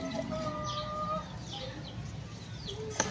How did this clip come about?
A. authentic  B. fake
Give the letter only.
A